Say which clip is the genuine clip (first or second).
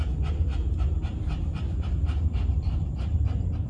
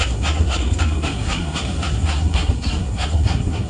first